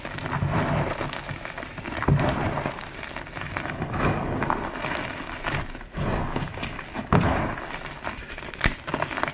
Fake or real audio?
real